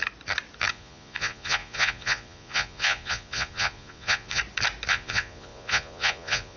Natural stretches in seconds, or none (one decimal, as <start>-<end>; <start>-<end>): 0.0-0.7; 4.4-4.9